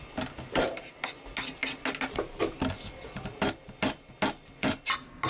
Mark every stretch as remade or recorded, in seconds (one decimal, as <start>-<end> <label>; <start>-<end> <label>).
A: 0.0-5.3 recorded